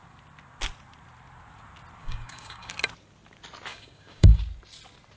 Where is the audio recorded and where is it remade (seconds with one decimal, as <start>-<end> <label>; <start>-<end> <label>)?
0.0-2.0 recorded; 2.0-2.7 remade; 2.7-3.7 recorded; 3.7-4.4 remade; 4.4-5.2 recorded